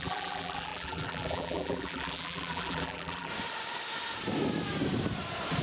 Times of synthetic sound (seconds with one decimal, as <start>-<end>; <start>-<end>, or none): 0.0-3.3